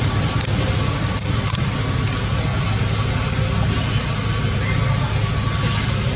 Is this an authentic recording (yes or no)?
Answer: yes